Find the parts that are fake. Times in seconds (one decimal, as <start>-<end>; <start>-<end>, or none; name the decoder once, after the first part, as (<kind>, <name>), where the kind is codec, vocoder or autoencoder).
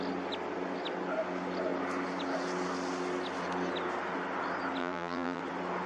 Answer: 4.8-5.4 (vocoder, BigVGAN v2)